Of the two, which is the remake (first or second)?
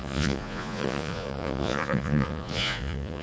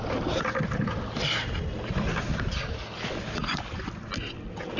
first